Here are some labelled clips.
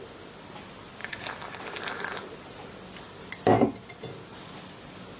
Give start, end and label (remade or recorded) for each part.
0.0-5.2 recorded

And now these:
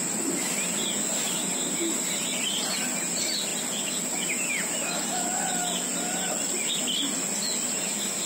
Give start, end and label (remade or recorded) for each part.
0.0-0.8 recorded; 0.8-2.6 remade; 2.6-8.3 recorded

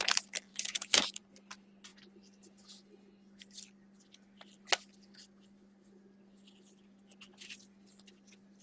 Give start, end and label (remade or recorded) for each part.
0.0-0.5 recorded; 0.5-1.2 remade; 1.2-8.6 recorded